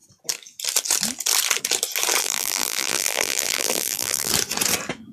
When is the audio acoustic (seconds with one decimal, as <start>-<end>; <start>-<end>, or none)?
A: 0.0-2.2; 4.3-5.1